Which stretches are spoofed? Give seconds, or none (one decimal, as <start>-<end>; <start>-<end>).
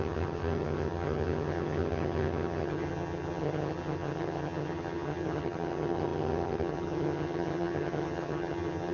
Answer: 0.0-8.9